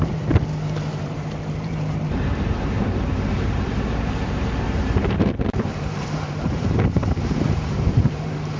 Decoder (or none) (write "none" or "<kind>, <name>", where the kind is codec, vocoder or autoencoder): vocoder, BigVGAN v2